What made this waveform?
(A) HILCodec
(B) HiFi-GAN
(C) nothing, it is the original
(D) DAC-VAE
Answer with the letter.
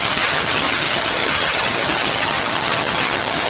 B